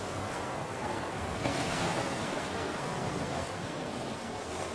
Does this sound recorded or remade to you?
remade